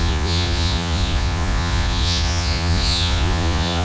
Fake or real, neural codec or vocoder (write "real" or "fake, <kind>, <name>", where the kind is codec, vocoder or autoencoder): fake, vocoder, Vocos